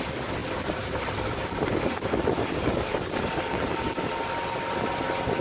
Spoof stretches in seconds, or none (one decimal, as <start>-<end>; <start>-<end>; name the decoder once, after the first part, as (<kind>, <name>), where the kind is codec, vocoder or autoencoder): none